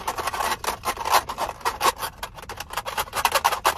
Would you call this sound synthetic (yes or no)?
no